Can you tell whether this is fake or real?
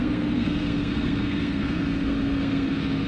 fake